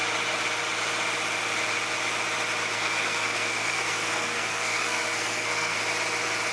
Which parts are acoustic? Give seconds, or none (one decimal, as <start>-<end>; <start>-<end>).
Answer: 0.0-2.7; 5.8-6.5